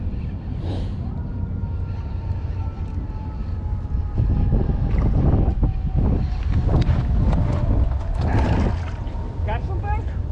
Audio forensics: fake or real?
real